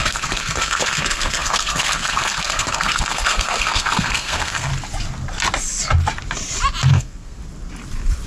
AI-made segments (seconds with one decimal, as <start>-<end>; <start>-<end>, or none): 0.0-4.7; 6.9-7.4